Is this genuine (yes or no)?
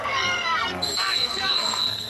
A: no